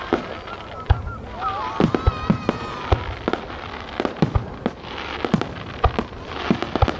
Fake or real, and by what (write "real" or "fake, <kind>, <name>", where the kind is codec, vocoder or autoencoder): real